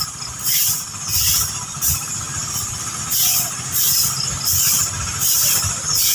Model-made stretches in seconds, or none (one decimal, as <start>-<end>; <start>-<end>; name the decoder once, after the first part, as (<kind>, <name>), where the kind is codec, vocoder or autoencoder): none